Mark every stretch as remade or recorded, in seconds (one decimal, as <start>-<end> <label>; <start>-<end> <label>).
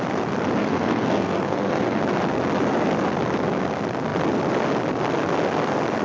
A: 0.0-0.6 recorded; 0.6-2.0 remade; 2.0-6.0 recorded